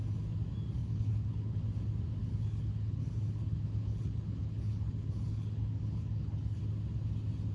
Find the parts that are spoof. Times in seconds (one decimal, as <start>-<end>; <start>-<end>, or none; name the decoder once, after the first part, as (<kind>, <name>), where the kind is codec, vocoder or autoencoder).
0.8-1.6 (codec, HILCodec); 2.2-6.6